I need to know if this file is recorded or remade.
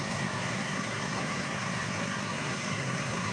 remade